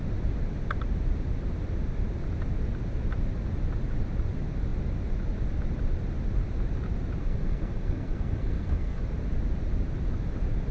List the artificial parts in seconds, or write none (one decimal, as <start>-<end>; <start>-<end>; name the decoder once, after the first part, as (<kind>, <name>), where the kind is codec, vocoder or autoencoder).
7.2-9.0 (codec, SNAC)